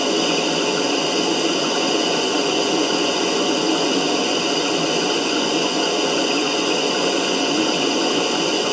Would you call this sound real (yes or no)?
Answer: no